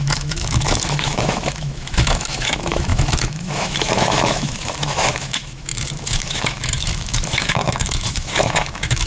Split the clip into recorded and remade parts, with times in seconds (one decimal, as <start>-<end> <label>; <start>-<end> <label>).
0.0-9.1 remade